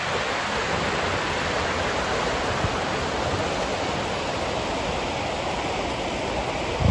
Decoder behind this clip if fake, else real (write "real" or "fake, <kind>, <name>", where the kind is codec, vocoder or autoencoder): real